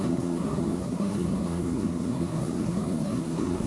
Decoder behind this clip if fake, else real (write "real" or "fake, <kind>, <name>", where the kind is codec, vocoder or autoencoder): fake, codec, SNAC